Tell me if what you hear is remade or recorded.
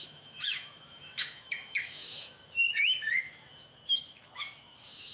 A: remade